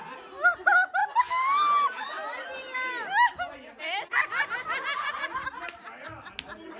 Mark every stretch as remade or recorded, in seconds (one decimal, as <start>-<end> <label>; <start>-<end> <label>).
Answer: 0.0-6.8 recorded